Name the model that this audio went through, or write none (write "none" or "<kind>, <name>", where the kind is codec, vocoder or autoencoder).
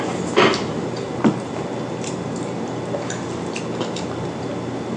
none